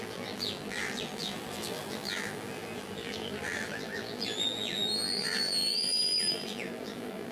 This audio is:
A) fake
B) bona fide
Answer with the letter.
A